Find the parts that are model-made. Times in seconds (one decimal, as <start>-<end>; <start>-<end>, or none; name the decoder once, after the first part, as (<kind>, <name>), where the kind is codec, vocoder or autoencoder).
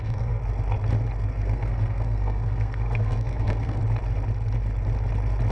0.0-0.4 (codec, SNAC); 1.3-3.8